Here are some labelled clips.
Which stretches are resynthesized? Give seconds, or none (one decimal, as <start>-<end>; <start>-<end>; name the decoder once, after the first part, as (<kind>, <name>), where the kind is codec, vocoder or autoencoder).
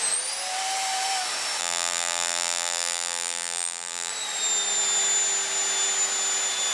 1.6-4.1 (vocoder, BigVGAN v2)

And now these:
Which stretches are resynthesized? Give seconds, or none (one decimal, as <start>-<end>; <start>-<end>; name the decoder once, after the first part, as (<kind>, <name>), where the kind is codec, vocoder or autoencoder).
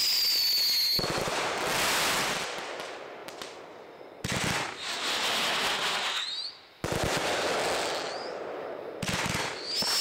none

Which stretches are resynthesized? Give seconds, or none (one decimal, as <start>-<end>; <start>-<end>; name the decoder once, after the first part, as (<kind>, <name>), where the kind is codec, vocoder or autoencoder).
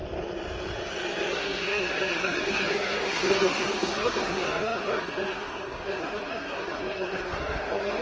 1.3-8.0 (codec, SNAC)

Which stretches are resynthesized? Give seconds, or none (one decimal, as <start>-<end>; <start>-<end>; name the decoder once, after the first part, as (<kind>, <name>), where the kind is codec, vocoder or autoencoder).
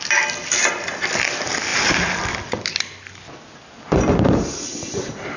none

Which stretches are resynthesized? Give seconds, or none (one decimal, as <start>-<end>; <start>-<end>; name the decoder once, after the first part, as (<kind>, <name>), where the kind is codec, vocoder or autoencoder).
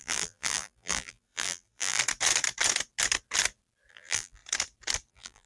0.0-2.0 (vocoder, BigVGAN v2); 3.9-4.4; 5.1-5.5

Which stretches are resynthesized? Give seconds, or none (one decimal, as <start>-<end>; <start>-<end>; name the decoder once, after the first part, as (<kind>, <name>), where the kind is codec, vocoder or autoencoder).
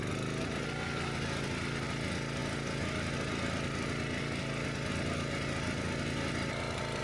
none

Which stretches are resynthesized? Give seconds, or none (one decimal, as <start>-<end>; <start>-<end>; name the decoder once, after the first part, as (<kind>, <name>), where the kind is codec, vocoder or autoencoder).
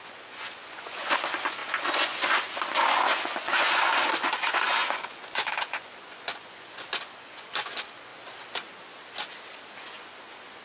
0.0-8.1 (vocoder, Vocos); 9.8-10.6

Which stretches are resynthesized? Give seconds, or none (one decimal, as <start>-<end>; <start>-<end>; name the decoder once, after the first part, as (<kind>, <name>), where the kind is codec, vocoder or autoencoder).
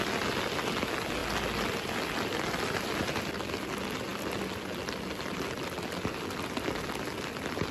none